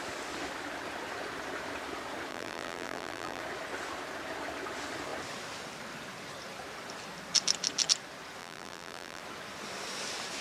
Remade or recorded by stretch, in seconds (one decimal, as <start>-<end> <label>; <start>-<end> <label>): 0.0-2.3 recorded; 2.3-3.4 remade; 3.4-8.4 recorded; 8.4-9.2 remade; 9.2-10.4 recorded